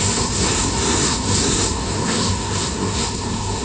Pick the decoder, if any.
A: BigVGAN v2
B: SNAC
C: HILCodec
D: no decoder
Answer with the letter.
B